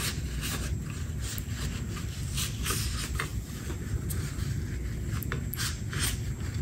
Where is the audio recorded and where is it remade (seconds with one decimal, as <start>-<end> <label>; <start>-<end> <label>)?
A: 0.0-3.3 recorded; 3.3-4.6 remade; 4.6-6.6 recorded